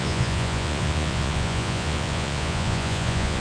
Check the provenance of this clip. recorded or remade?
remade